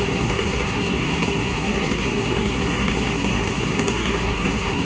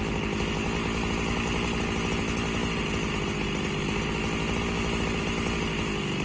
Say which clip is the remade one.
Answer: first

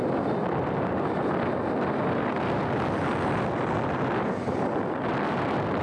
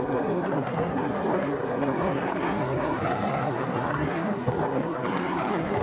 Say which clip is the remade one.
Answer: second